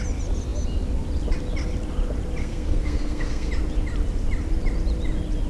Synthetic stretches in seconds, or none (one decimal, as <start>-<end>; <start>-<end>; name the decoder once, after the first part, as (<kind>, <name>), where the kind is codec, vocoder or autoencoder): 2.4-3.5 (codec, SNAC)